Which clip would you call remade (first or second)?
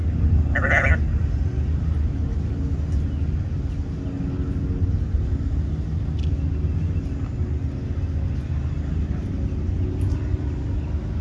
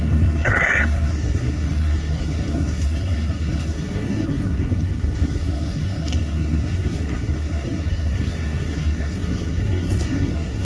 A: second